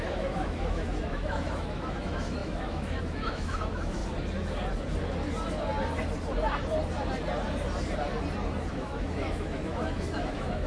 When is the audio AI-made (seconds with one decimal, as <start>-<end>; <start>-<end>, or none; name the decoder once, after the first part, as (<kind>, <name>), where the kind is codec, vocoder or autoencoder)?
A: 0.0-4.0 (autoencoder, DAC-VAE); 8.7-10.7